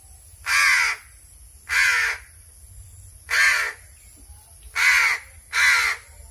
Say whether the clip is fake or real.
real